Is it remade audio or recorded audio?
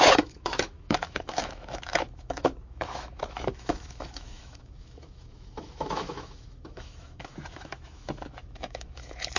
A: remade